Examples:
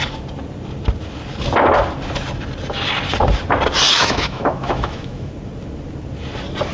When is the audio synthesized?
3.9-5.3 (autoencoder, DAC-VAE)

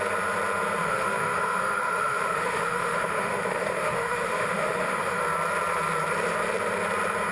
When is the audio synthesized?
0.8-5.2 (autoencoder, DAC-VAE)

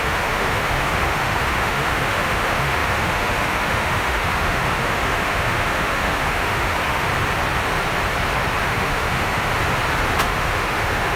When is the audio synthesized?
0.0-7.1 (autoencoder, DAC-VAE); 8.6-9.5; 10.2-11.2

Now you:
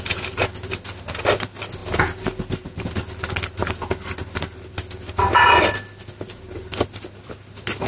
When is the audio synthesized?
none

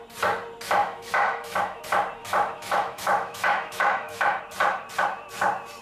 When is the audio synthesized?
0.8-1.8 (autoencoder, DAC-VAE); 2.2-4.4

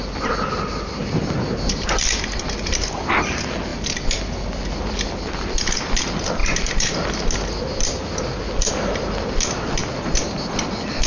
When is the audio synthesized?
none

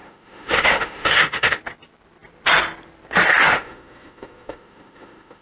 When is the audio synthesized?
0.0-1.6 (autoencoder, DAC-VAE); 3.5-5.4